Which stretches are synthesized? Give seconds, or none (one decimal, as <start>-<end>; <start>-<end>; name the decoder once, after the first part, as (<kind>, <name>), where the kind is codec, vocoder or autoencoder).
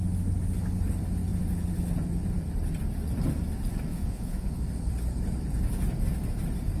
3.9-4.6 (vocoder, Vocos)